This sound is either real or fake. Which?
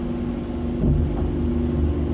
real